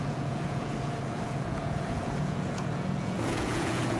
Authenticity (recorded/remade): remade